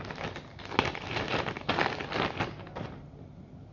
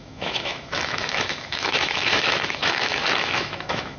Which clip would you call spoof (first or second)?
second